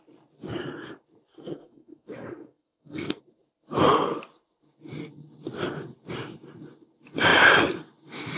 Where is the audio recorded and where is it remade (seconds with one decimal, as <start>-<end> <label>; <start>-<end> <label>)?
0.0-1.3 recorded; 1.3-3.2 remade; 3.2-8.4 recorded